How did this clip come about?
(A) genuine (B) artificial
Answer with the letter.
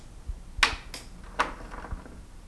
A